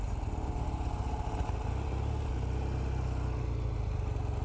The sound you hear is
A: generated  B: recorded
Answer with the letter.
B